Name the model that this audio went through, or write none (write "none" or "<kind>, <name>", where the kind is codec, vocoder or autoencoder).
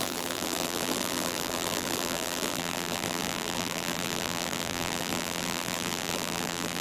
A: vocoder, BigVGAN v2